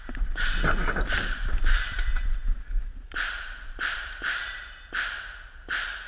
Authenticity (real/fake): real